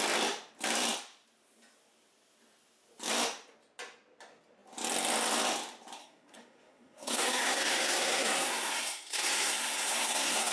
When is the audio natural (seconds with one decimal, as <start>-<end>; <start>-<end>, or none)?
0.0-6.0

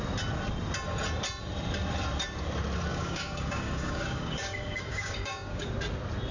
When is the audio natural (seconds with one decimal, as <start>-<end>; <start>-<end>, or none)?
0.0-2.9; 5.7-6.3

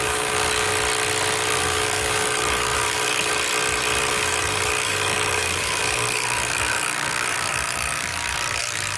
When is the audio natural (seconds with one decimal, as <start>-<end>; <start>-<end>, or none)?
0.7-1.5; 3.3-4.1

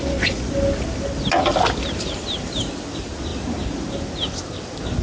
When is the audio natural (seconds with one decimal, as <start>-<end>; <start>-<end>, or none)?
0.0-5.0

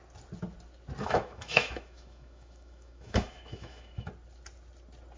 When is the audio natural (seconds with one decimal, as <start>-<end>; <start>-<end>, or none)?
0.0-1.0; 4.1-5.2

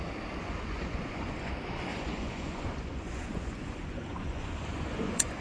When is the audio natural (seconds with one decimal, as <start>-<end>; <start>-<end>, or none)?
0.0-0.4; 1.5-1.9